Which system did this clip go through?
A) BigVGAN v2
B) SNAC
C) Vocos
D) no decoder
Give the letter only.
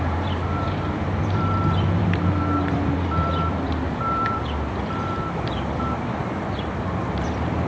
A